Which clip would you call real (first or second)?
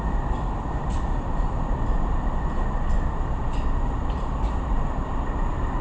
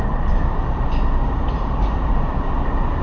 second